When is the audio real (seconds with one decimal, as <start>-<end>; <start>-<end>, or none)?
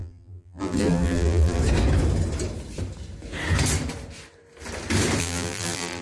1.6-5.2